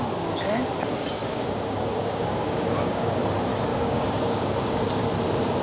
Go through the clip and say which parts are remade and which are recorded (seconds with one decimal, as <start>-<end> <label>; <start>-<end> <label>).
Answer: 0.0-1.2 recorded; 1.2-3.2 remade; 3.2-3.7 recorded; 3.7-5.0 remade; 5.0-5.6 recorded